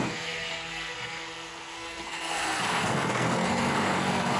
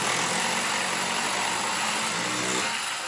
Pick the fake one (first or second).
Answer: first